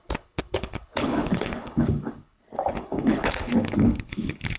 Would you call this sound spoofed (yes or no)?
yes